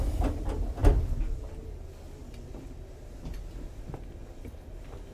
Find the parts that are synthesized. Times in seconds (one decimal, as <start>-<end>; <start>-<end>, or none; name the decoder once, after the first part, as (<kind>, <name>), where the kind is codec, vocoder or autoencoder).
none